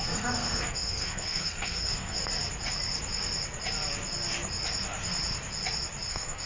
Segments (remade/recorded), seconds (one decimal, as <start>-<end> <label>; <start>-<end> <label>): 0.0-2.2 remade; 2.2-6.1 recorded; 6.1-6.5 remade